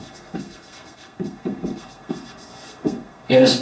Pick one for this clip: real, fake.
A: fake